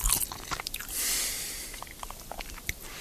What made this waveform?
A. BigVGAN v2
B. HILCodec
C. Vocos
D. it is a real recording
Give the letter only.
D